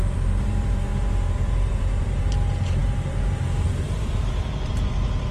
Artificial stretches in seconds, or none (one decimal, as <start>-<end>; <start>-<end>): 0.0-5.3